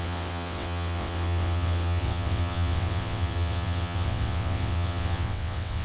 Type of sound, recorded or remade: remade